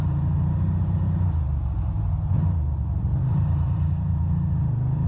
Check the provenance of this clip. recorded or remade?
remade